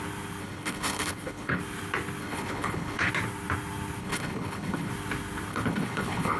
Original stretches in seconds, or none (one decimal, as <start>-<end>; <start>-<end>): 0.0-0.4; 1.6-2.2; 3.1-4.0; 4.9-5.5

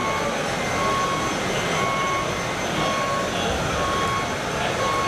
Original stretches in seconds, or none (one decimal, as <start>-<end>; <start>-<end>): 0.0-5.1

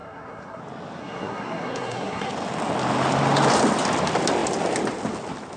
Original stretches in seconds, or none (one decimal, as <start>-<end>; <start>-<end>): 0.6-1.0; 2.3-5.6

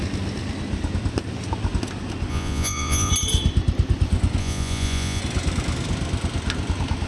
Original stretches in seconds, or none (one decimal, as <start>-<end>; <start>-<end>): 0.0-2.3; 3.1-4.4; 5.2-7.1

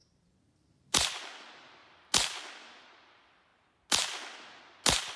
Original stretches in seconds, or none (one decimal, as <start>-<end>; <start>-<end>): 1.1-5.2

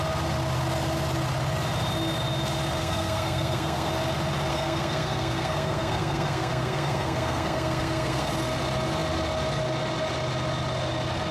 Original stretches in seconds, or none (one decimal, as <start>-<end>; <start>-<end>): 0.0-2.8; 3.9-4.5; 8.3-11.3